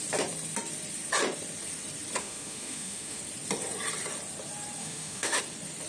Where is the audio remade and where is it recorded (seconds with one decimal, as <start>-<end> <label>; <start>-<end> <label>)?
0.0-2.2 recorded; 2.2-3.2 remade; 3.2-4.8 recorded; 4.8-5.4 remade; 5.4-5.9 recorded